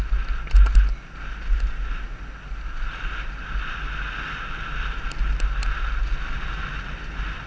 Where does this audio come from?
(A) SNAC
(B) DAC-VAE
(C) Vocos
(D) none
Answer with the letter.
D